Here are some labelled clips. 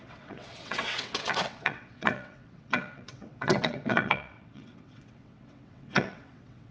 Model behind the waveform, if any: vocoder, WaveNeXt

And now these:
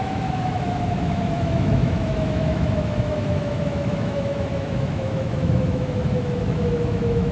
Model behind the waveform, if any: autoencoder, DAC-VAE